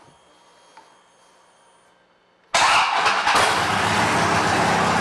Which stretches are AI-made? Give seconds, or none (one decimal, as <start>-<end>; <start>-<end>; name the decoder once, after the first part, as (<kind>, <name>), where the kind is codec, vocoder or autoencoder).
none